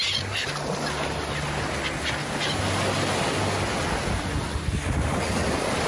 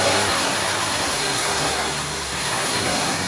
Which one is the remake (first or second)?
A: second